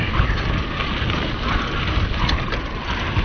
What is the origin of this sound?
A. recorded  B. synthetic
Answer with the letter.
A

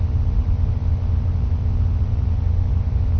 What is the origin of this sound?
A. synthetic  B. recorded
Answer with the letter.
A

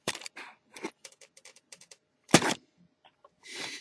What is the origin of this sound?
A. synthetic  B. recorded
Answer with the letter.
A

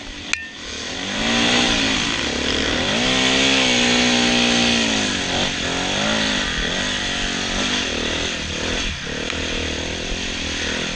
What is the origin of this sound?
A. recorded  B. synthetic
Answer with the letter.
A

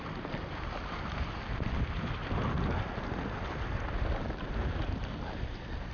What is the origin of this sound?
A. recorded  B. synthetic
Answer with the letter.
A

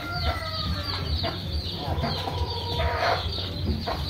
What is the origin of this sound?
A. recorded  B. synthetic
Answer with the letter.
B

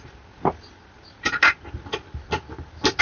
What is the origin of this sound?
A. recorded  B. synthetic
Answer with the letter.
A